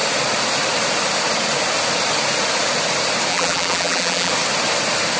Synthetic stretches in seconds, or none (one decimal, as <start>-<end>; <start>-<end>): 3.3-4.3